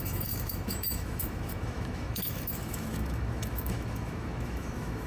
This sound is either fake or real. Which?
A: fake